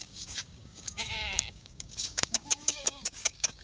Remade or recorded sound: remade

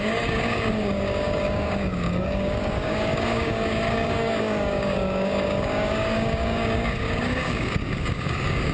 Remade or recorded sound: remade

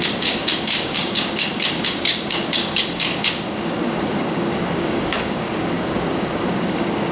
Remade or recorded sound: remade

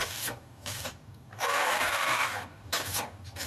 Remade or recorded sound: remade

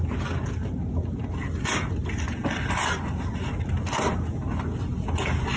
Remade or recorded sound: recorded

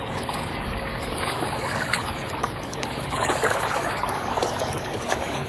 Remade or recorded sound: remade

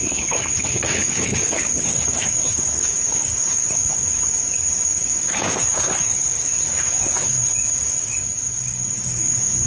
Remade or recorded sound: remade